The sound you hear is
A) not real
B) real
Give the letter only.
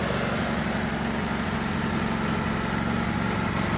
B